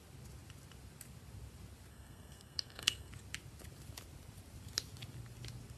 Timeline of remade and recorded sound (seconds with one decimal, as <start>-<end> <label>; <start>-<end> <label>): 0.0-1.9 recorded; 1.9-3.1 remade; 3.1-5.8 recorded